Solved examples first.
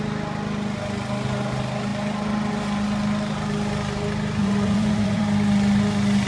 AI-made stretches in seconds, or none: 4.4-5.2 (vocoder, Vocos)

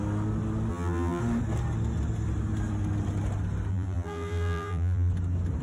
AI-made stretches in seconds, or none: 0.7-1.2 (vocoder, BigVGAN v2); 3.7-5.1

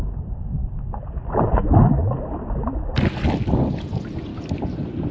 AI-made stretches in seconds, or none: 0.0-0.6 (vocoder, Vocos); 3.7-4.3

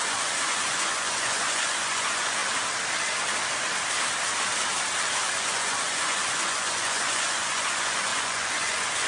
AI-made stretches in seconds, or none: 0.0-2.4 (vocoder, Vocos); 5.2-9.1

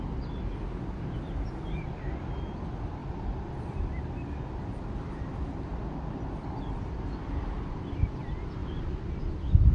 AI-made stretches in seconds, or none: 3.0-4.1 (vocoder, BigVGAN v2); 5.7-7.4